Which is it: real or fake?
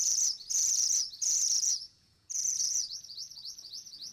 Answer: fake